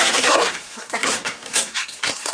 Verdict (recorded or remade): remade